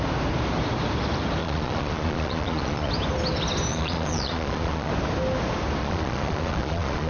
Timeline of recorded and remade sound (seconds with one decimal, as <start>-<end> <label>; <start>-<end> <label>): 0.0-1.4 recorded; 1.4-2.9 remade; 2.9-3.7 recorded; 3.7-4.9 remade; 4.9-5.8 recorded; 5.8-7.1 remade